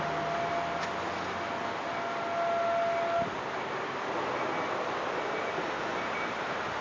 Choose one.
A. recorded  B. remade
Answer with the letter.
A